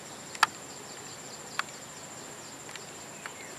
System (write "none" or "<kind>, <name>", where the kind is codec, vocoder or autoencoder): none